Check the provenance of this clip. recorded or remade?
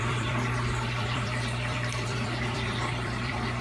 remade